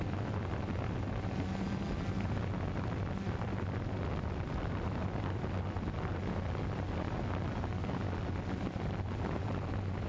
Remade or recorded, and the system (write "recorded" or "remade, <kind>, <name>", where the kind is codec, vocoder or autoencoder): recorded